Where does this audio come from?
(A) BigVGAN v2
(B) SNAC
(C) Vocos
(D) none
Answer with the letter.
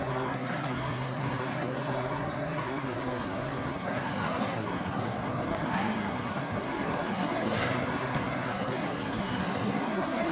B